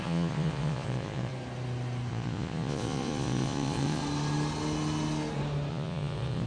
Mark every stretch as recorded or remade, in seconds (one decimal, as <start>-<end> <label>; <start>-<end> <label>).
0.0-1.3 remade; 1.3-2.1 recorded; 2.1-4.0 remade; 4.0-5.7 recorded; 5.7-6.5 remade

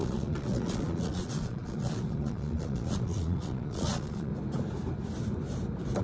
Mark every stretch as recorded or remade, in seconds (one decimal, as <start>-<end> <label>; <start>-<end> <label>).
0.0-4.3 remade; 4.3-6.0 recorded